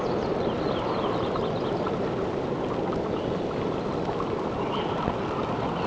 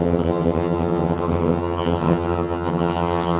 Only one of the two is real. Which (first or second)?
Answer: first